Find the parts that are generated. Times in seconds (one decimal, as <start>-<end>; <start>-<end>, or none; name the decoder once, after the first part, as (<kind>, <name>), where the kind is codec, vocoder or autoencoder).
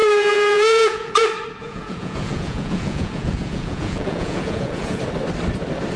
0.0-1.2 (vocoder, Vocos); 1.6-5.0